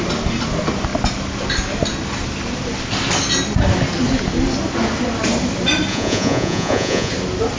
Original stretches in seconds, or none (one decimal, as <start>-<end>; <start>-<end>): 0.0-5.9; 7.1-7.6